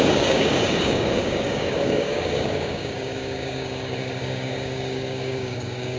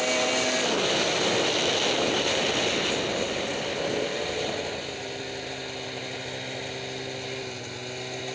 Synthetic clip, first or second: first